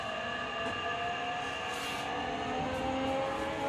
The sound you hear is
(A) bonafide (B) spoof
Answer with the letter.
A